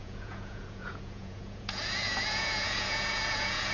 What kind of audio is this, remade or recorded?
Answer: remade